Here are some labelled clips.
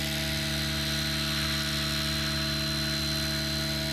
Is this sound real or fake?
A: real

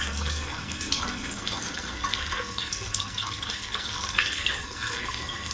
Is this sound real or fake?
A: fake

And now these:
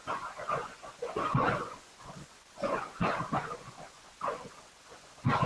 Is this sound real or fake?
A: fake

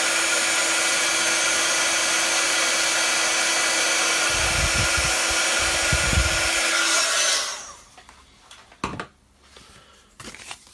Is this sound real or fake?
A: real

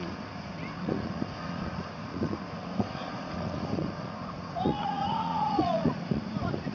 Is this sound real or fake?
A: fake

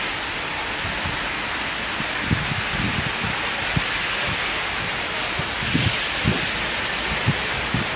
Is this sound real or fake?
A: real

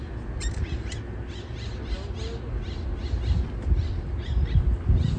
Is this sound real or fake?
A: real